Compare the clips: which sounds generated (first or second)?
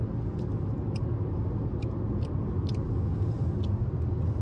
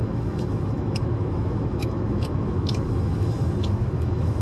second